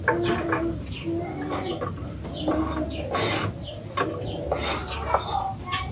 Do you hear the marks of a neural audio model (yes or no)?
no